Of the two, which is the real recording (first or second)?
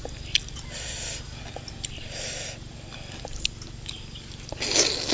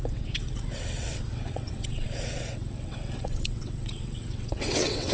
first